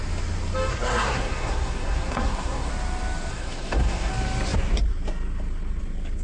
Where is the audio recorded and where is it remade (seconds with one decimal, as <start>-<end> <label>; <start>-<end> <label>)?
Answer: 0.0-0.7 recorded; 0.7-2.7 remade; 2.7-3.3 recorded; 3.3-4.1 remade; 4.1-6.2 recorded